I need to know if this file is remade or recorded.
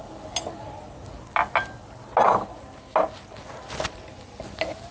recorded